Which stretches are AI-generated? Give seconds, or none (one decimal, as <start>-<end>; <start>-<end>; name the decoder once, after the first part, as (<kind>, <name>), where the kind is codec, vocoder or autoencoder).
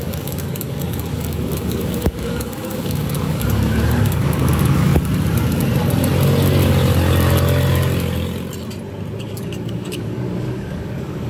0.0-4.9 (codec, DAC); 9.2-11.3